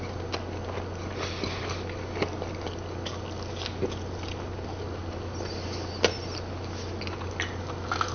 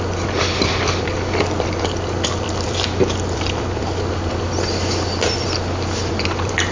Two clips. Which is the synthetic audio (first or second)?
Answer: second